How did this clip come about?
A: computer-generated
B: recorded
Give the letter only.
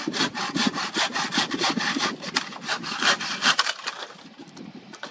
A